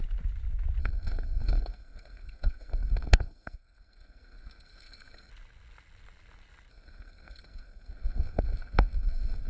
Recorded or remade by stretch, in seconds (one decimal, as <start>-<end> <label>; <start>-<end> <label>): 0.0-0.8 recorded; 0.8-5.3 remade; 5.3-6.7 recorded; 6.7-9.5 remade